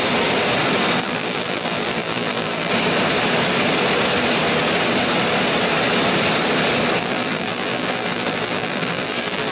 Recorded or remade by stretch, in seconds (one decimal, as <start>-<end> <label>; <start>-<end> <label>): 0.0-1.0 recorded; 1.0-2.7 remade; 2.7-7.0 recorded; 7.0-9.5 remade